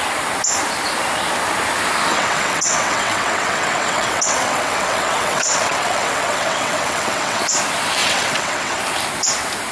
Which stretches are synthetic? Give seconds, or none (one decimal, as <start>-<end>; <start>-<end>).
2.1-7.4; 8.0-8.8